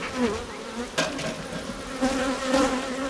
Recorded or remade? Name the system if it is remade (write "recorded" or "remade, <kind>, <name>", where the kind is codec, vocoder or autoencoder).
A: recorded